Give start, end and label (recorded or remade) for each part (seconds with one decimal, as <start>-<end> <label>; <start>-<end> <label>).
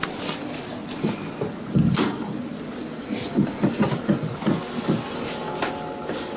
0.0-2.8 recorded; 2.8-4.3 remade; 4.3-6.4 recorded